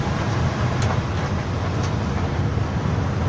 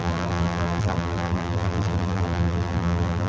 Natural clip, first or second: first